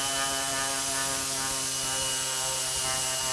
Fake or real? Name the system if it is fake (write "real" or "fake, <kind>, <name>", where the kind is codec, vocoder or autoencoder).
real